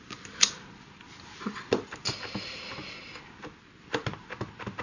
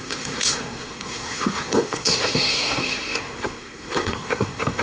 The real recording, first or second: first